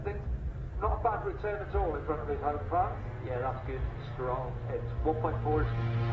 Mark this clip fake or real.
real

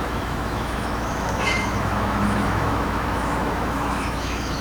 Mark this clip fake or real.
fake